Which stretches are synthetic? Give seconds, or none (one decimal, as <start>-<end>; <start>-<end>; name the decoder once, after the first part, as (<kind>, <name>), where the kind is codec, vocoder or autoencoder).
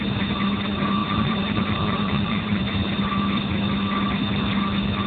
1.0-2.6 (vocoder, Vocos)